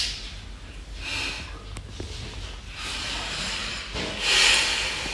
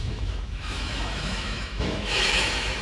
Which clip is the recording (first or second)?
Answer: first